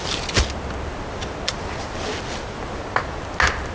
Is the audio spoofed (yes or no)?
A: no